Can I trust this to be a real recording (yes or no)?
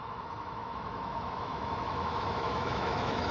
no